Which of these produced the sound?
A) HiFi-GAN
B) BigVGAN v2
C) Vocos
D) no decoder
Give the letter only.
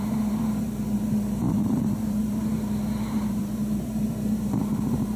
B